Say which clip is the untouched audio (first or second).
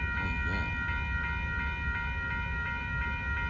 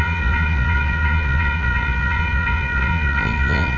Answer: first